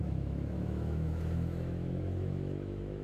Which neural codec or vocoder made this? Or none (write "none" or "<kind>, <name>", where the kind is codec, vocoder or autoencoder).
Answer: autoencoder, DAC-VAE